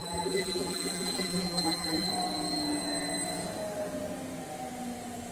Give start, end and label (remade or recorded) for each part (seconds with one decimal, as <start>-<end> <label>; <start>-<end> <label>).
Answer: 0.0-2.1 remade; 2.1-5.3 recorded